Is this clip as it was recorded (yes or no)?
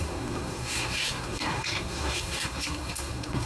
no